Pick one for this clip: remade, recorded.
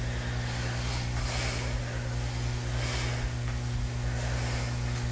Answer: recorded